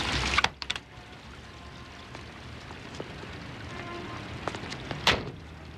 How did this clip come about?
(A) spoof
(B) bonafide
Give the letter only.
A